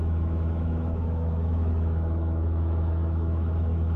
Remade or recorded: remade